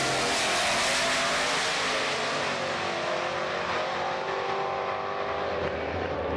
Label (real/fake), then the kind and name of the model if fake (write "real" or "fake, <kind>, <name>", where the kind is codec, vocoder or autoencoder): real